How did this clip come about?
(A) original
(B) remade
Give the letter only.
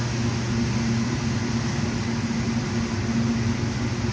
A